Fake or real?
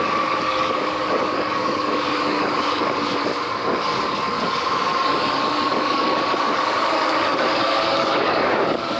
fake